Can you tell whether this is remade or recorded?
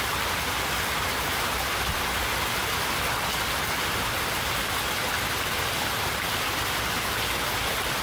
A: recorded